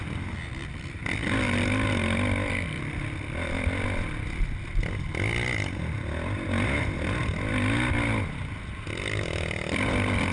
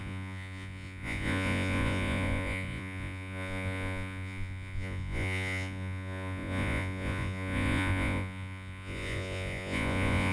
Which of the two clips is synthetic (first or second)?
second